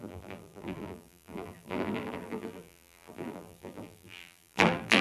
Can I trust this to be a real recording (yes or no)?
no